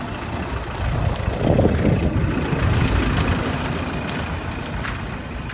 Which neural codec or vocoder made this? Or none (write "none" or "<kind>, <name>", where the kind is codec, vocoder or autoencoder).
none